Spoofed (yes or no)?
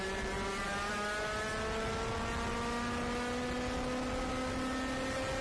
no